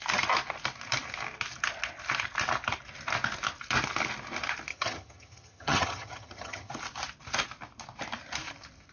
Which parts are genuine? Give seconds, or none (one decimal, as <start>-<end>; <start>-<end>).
0.0-4.7; 6.7-8.9